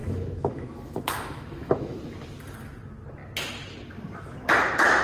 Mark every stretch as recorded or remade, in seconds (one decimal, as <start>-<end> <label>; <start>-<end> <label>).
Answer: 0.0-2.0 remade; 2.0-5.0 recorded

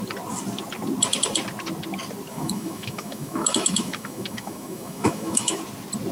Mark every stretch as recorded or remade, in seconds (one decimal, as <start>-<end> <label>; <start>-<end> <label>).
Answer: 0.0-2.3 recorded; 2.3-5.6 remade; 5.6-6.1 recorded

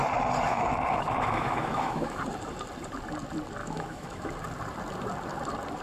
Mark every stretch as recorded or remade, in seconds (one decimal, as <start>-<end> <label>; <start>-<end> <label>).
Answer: 0.0-0.5 recorded; 0.5-2.2 remade; 2.2-3.6 recorded; 3.6-4.3 remade; 4.3-5.8 recorded